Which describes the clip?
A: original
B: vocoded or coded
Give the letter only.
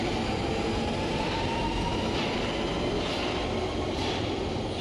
A